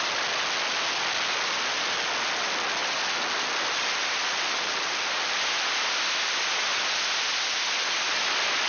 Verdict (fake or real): real